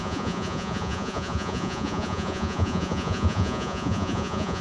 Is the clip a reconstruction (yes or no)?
yes